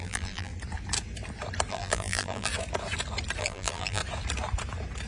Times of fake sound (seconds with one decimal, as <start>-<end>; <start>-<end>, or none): 0.0-0.5; 1.7-2.5; 3.4-4.0